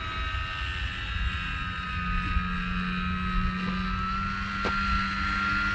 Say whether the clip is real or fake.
real